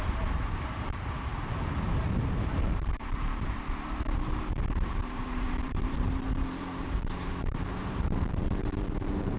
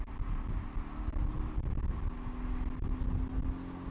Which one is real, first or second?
second